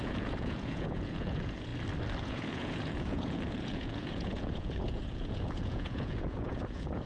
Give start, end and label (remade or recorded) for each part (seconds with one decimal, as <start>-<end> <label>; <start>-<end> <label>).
0.0-1.7 remade; 1.7-2.2 recorded; 2.2-7.1 remade